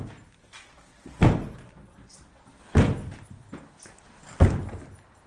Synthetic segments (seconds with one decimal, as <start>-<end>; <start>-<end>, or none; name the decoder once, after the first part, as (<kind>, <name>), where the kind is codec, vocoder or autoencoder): none